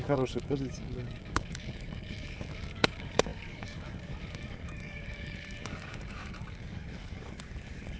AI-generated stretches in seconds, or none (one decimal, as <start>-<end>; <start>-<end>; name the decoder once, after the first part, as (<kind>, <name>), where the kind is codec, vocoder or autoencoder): 0.0-8.0 (codec, DAC)